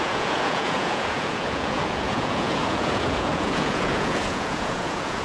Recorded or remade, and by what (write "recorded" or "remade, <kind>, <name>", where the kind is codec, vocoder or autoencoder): remade, vocoder, Vocos